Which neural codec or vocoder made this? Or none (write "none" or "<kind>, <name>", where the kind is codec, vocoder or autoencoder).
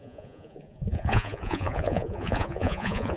vocoder, Vocos